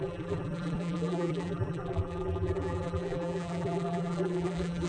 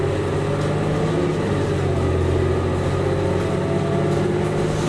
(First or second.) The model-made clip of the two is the first